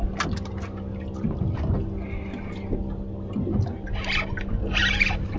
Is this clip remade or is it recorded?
recorded